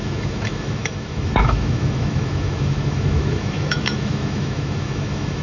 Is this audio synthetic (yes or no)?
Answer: yes